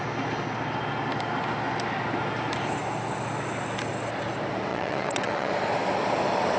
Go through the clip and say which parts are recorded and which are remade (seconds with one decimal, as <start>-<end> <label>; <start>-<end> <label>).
0.0-4.7 recorded; 4.7-5.5 remade; 5.5-6.6 recorded